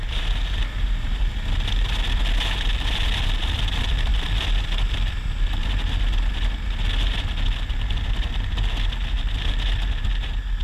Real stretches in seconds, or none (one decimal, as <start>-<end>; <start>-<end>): 0.0-10.6